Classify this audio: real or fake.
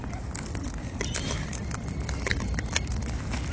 real